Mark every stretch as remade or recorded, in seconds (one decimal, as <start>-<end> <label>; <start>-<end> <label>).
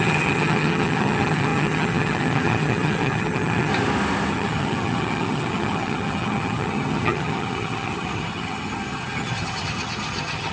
0.0-3.7 remade; 3.7-4.3 recorded; 4.3-10.5 remade